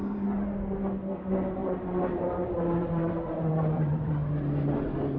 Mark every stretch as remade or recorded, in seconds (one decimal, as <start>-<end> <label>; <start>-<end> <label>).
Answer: 0.0-1.6 recorded; 1.6-4.1 remade; 4.1-5.2 recorded